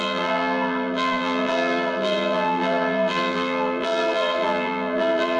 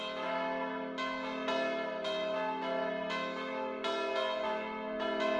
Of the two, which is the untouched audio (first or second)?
second